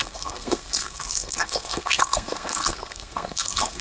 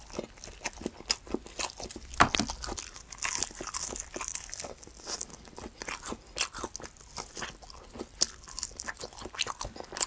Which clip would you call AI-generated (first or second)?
first